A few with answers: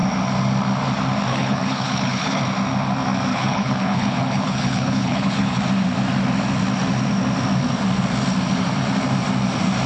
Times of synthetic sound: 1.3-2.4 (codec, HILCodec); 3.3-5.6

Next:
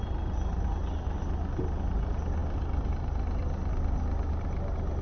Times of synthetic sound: none